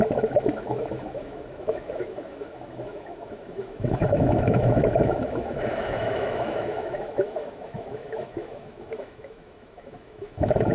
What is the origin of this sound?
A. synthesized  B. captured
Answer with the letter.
A